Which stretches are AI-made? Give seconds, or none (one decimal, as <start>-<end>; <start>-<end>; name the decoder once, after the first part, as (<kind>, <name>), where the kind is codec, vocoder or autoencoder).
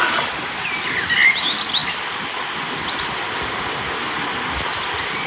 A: none